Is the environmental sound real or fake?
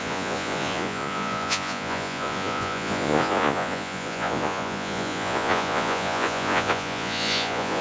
fake